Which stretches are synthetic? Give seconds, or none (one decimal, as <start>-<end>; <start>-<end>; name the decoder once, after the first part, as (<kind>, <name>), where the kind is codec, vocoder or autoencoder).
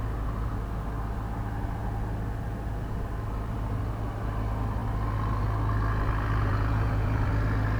6.4-7.3 (vocoder, Vocos)